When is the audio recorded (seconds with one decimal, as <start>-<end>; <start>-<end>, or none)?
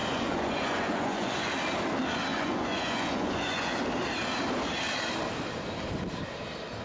1.5-2.3; 3.8-6.8